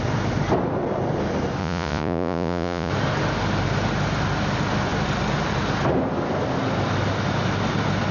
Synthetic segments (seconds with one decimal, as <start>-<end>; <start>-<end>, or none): 1.6-2.9